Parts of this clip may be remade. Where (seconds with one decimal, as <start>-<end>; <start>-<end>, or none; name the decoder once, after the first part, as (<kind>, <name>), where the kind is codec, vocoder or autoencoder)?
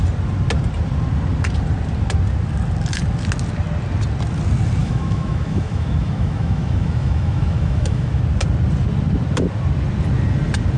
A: 4.8-8.2 (autoencoder, DAC-VAE)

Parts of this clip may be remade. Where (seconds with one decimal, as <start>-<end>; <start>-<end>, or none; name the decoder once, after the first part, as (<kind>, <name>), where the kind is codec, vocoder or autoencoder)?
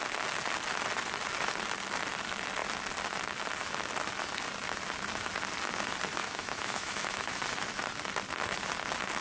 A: 6.2-7.3 (autoencoder, DAC-VAE)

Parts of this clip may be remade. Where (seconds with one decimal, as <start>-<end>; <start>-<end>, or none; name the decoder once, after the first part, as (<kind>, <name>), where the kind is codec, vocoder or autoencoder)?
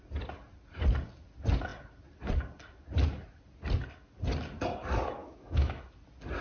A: 5.2-5.8 (autoencoder, DAC-VAE)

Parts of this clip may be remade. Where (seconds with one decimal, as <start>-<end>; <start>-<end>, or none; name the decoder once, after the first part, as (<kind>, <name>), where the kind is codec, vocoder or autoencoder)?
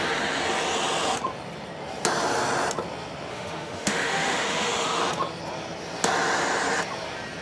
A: 3.3-5.0 (autoencoder, DAC-VAE)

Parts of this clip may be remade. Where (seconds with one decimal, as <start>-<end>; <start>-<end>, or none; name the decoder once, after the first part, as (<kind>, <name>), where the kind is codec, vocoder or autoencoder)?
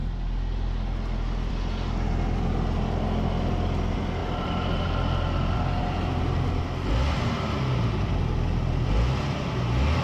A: none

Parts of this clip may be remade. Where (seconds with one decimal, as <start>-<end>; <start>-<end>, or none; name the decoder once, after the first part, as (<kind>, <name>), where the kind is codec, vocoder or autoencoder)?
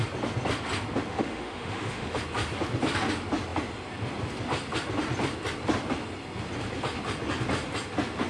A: 1.1-2.2 (autoencoder, DAC-VAE)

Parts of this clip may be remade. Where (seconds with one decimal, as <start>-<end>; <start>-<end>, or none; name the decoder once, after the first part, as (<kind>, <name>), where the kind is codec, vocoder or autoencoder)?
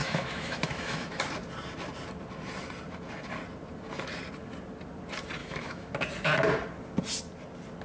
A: 0.0-1.2 (autoencoder, DAC-VAE); 5.4-5.9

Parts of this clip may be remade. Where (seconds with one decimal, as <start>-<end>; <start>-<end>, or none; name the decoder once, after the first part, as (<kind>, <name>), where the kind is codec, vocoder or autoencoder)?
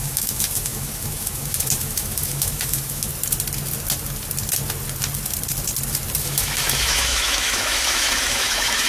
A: 0.0-3.1 (autoencoder, DAC-VAE); 6.2-8.9